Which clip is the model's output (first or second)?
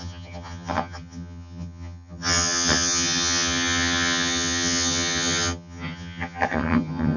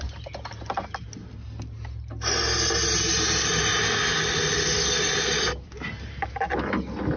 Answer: first